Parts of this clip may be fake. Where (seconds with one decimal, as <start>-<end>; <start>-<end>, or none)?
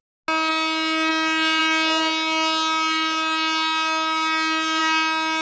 none